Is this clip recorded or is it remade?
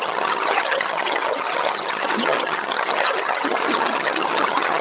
remade